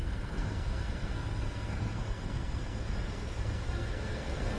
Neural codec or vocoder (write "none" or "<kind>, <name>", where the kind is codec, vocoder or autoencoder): codec, SNAC